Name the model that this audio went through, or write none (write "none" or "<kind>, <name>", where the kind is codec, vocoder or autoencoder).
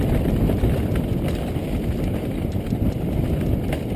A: none